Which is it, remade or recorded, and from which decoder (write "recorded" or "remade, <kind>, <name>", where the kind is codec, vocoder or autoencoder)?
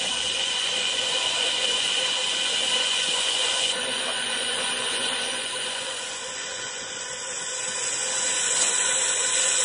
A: remade, vocoder, Vocos